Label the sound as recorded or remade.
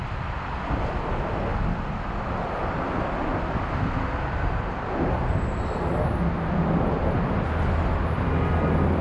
recorded